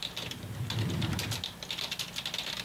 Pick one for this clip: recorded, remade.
recorded